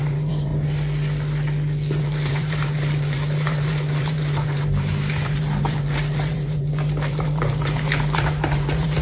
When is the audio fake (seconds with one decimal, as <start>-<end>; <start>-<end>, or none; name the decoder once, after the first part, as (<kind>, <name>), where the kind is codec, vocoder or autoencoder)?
0.0-0.5 (vocoder, BigVGAN v2); 2.0-9.0